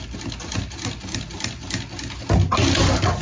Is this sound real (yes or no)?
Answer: yes